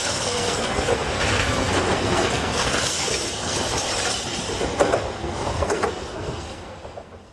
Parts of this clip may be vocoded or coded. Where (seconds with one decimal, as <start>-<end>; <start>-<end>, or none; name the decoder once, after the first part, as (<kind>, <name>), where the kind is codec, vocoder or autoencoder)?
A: 0.0-3.7 (codec, SNAC); 4.6-7.3